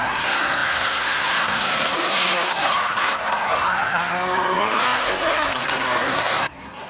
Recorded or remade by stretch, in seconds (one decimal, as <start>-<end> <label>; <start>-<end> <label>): 0.0-6.9 remade